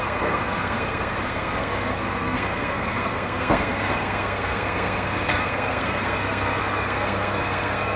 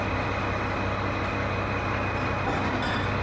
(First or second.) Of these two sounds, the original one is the second